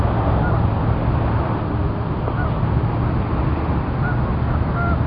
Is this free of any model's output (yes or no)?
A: yes